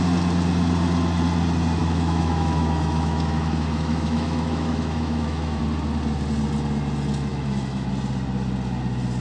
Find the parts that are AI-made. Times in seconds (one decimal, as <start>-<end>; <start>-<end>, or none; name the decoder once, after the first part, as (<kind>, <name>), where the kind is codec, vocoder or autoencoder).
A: 1.8-5.6 (autoencoder, DAC-VAE); 7.3-7.9